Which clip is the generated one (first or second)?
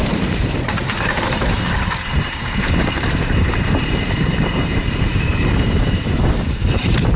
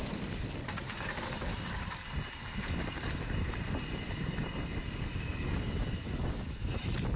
first